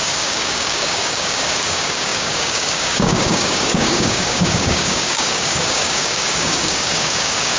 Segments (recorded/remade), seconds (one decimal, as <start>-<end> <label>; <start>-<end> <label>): 0.0-7.6 remade